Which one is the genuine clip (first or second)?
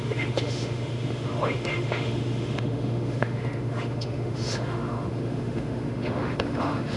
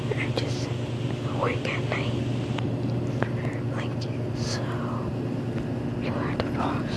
second